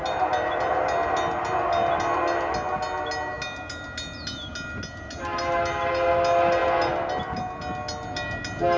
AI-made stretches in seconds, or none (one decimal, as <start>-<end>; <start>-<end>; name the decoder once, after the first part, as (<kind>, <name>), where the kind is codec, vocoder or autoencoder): none